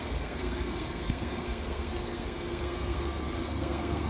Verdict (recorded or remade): remade